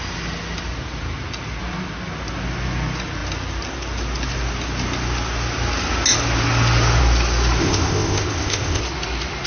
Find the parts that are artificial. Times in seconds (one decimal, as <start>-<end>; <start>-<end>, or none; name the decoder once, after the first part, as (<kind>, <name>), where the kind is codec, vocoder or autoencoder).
7.6-8.8 (codec, ZipCodec)